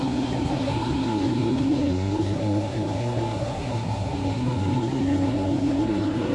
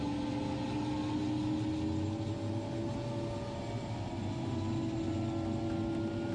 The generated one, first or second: first